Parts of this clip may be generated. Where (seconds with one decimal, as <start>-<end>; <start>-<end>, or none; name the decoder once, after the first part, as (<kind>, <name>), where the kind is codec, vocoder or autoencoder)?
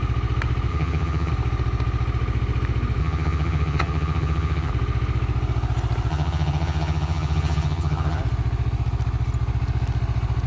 0.7-1.3 (vocoder, HiFi-GAN); 3.0-4.7; 6.1-8.2